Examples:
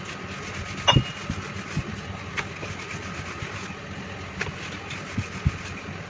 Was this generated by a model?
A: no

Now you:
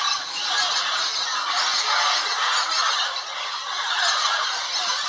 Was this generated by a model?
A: no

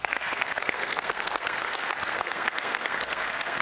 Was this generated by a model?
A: yes